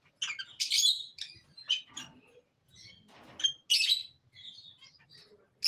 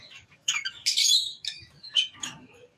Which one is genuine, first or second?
first